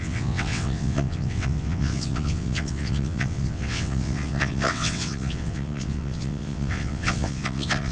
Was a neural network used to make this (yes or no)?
yes